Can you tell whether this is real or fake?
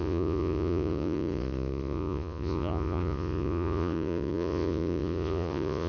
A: fake